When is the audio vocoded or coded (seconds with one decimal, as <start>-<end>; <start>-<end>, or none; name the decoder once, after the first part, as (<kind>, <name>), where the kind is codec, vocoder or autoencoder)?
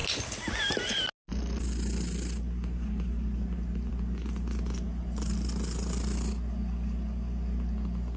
none